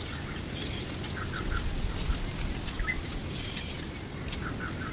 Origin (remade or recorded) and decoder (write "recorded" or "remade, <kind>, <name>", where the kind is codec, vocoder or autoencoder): recorded